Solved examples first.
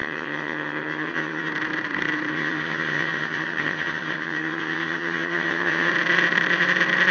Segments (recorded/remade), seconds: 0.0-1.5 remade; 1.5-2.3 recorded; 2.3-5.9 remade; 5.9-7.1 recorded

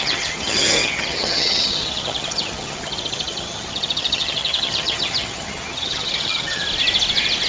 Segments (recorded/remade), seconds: 0.0-6.6 remade; 6.6-7.5 recorded

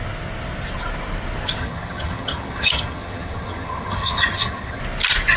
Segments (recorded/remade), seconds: 0.0-1.6 recorded; 1.6-4.8 remade; 4.8-5.4 recorded

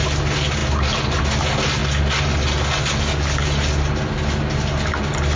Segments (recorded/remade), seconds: 0.0-5.4 recorded

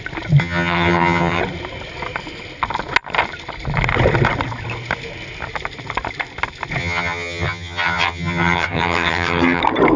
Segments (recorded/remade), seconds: 0.0-0.4 recorded; 0.4-1.4 remade; 1.4-6.8 recorded; 6.8-9.6 remade; 9.6-10.0 recorded

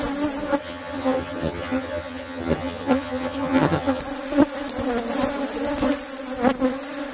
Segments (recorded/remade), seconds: 0.0-0.6 recorded; 0.6-4.0 remade; 4.0-7.1 recorded